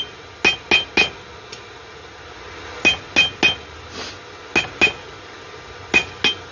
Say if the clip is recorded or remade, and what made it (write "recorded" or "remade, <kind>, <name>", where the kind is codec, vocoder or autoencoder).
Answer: recorded